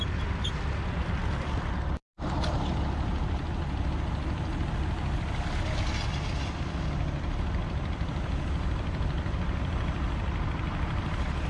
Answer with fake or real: fake